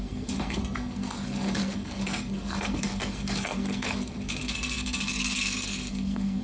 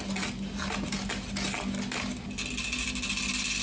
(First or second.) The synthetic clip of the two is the first